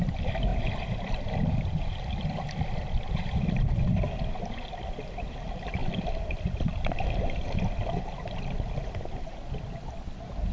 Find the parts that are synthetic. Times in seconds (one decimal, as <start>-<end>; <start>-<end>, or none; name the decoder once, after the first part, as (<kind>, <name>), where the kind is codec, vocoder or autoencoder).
0.5-4.3 (vocoder, BigVGAN v2); 5.8-6.6